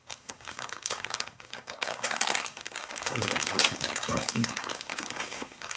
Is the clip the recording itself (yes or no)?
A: no